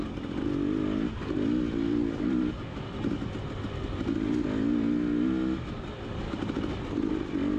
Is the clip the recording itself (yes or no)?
yes